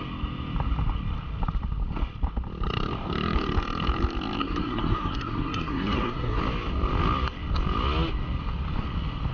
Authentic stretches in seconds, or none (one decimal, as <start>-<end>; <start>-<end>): 0.0-4.4; 6.4-9.3